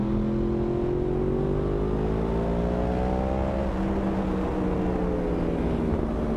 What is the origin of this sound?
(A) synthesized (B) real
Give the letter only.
B